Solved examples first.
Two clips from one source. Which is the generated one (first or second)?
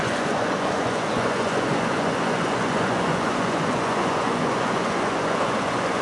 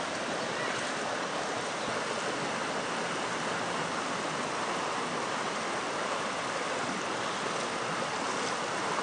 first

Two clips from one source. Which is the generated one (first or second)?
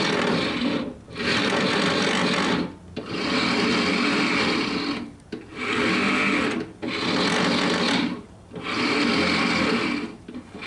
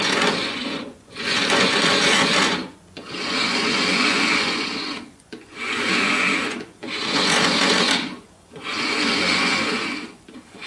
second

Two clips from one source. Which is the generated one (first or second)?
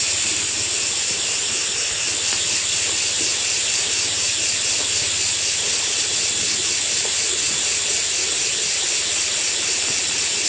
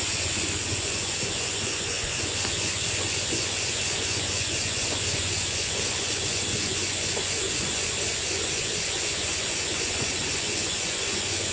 second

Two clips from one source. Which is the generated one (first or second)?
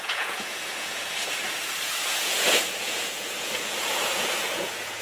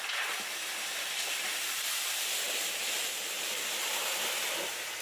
first